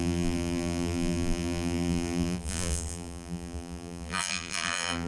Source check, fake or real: fake